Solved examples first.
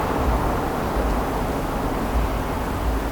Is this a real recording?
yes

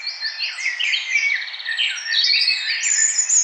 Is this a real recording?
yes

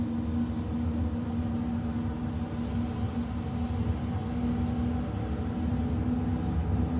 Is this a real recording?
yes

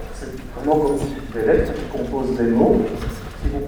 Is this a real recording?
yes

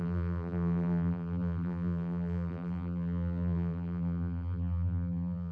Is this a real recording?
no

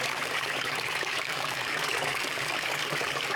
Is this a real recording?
no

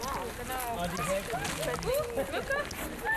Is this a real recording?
yes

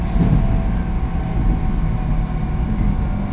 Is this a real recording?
yes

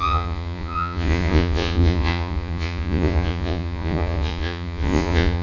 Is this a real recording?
no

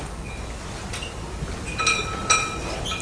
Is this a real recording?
yes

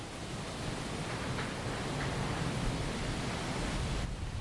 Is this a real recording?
yes